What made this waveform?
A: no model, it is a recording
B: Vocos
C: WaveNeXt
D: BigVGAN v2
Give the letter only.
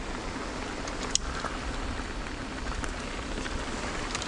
A